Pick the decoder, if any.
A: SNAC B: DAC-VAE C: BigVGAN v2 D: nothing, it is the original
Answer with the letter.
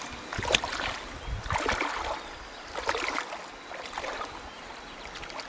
D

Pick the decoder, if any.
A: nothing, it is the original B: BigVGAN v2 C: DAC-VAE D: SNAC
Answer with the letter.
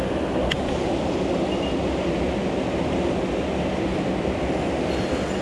A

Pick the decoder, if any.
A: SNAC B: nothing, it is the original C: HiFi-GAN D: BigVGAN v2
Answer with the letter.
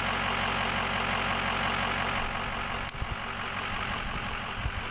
B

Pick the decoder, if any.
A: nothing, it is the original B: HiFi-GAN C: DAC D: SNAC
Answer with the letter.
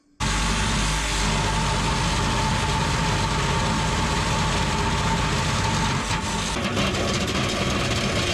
A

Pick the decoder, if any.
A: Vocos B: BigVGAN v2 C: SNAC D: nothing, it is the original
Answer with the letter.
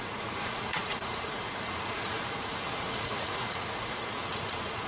A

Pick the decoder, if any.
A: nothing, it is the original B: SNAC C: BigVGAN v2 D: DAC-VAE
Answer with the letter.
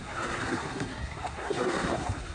B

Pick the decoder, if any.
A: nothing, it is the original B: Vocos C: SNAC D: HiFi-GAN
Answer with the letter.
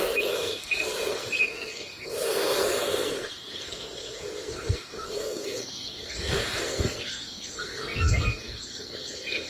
C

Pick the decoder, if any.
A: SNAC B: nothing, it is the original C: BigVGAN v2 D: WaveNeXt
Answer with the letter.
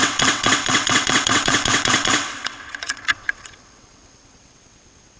D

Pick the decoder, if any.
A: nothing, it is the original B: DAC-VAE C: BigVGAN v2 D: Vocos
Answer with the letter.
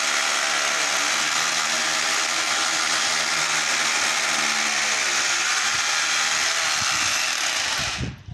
A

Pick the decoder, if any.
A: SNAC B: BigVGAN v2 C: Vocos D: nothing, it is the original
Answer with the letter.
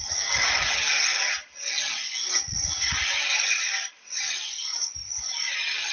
D